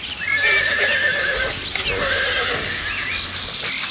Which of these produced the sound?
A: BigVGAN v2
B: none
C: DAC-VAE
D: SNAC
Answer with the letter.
B